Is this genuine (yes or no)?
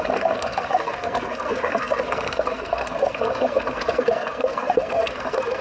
no